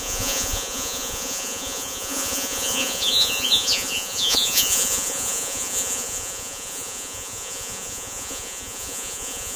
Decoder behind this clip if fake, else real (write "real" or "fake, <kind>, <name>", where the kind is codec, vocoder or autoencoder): fake, vocoder, Vocos